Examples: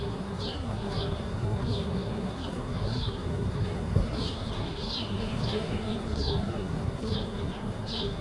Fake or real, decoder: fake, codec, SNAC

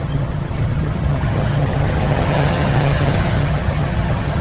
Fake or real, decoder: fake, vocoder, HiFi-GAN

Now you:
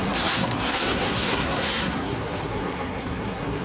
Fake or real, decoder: fake, codec, SNAC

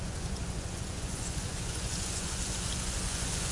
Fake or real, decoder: fake, vocoder, Vocos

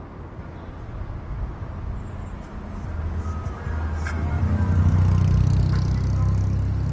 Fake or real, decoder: real